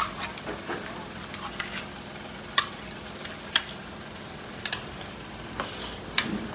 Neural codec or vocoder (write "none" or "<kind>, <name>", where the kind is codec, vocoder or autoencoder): none